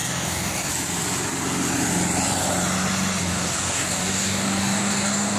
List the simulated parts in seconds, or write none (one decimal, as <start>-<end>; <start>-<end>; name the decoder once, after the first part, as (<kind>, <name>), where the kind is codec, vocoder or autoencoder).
0.0-0.7 (codec, DAC); 3.2-5.4